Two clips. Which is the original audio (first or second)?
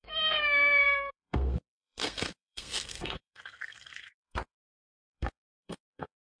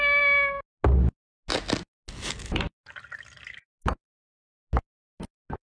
second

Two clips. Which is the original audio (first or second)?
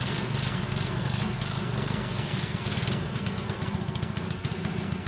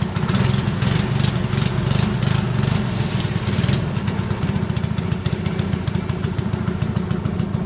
second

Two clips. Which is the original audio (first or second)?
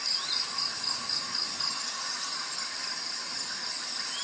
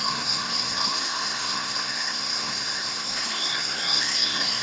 first